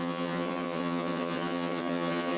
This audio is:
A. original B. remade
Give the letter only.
B